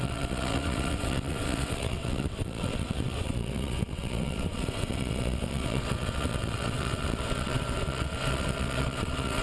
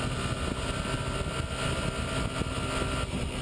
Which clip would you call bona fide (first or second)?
second